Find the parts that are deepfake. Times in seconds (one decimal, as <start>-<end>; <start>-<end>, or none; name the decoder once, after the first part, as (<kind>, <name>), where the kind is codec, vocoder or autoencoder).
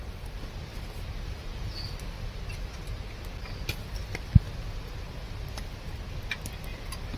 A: none